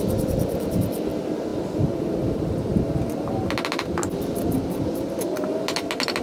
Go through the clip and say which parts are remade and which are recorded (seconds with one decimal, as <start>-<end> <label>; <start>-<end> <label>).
0.0-6.2 recorded